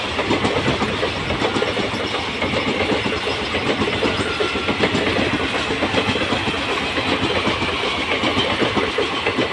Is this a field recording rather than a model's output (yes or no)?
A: yes